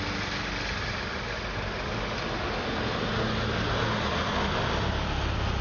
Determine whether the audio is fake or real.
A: real